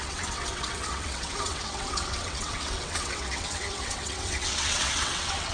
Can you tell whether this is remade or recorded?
remade